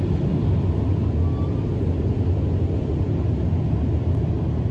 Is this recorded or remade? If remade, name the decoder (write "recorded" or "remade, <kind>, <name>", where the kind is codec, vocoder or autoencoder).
recorded